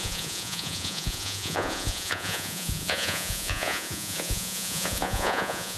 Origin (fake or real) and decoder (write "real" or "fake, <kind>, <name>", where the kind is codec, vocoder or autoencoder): fake, vocoder, Vocos